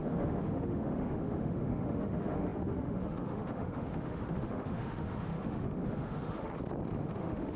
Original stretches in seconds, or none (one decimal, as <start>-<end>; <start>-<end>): 6.5-7.0